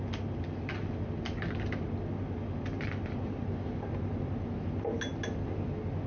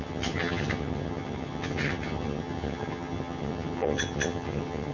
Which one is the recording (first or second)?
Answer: first